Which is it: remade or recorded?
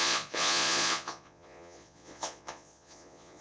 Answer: remade